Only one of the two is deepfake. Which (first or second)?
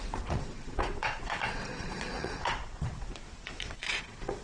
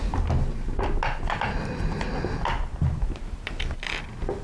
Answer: first